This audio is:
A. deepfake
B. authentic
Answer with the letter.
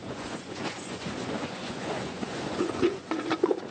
A